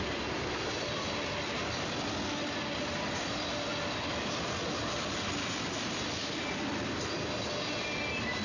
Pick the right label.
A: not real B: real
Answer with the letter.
B